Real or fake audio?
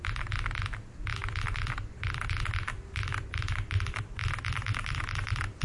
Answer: real